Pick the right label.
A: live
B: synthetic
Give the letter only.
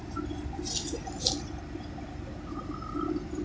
B